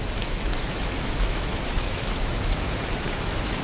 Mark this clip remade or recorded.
remade